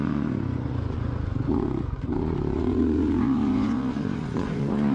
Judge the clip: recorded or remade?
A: remade